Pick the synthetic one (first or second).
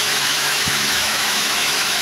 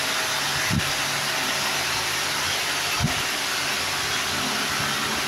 first